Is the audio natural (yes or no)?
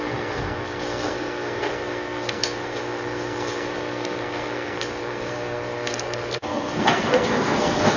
no